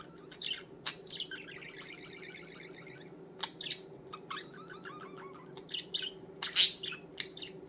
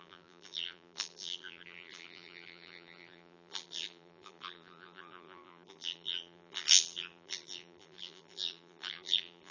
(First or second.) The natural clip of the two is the first